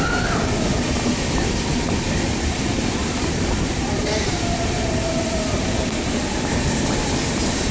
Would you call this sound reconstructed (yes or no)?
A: no